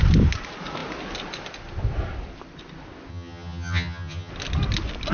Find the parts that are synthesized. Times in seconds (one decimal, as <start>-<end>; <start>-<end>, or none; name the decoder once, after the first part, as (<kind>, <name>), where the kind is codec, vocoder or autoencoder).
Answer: 3.1-4.3 (vocoder, HiFi-GAN)